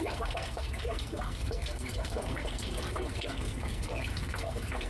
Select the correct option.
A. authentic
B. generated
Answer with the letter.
B